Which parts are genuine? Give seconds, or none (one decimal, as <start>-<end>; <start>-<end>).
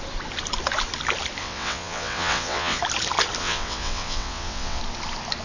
0.0-1.4; 2.8-3.4; 4.8-5.4